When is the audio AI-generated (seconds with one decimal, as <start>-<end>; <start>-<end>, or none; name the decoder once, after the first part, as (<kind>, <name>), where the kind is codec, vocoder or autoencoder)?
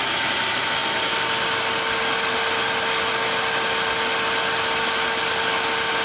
none